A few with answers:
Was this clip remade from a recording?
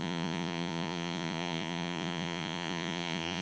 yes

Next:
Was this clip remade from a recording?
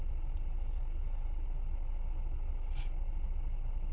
no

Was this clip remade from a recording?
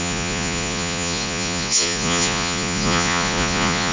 yes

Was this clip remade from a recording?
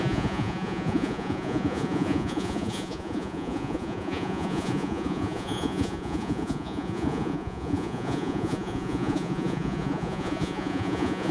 yes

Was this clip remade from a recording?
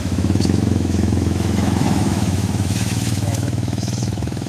yes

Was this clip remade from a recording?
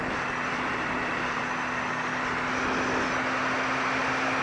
no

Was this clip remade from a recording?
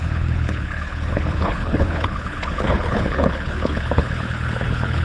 yes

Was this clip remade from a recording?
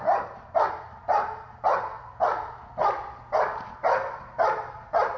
no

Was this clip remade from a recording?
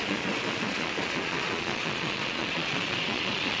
yes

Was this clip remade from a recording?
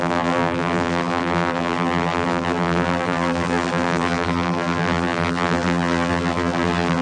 yes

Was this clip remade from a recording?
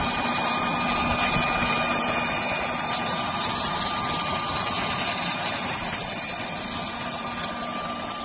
no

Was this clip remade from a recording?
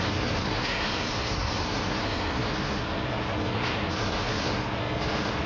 yes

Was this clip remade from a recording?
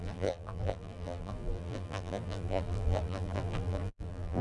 yes